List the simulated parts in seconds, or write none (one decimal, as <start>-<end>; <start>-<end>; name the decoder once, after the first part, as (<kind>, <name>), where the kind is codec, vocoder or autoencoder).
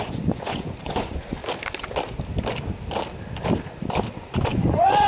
0.0-1.4 (vocoder, Vocos); 4.5-5.1